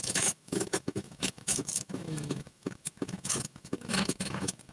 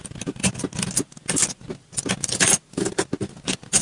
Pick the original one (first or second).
second